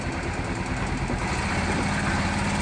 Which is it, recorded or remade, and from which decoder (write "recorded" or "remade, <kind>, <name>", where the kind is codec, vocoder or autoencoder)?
recorded